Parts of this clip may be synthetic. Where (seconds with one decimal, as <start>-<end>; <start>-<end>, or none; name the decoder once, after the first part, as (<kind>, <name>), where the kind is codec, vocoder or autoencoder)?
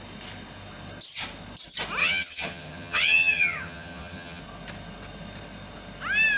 2.0-4.4 (vocoder, HiFi-GAN)